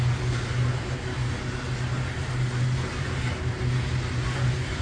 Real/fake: real